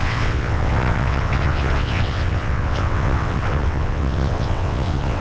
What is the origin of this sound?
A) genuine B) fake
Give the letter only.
B